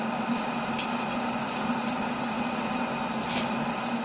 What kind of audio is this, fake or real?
real